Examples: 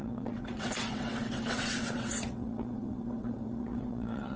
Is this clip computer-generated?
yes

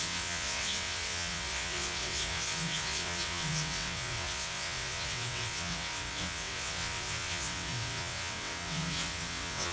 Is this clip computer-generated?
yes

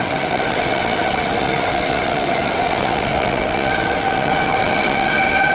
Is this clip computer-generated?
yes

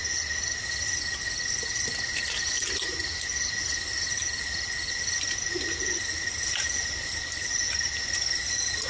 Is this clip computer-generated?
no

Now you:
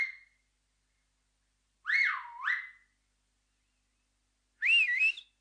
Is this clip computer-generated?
no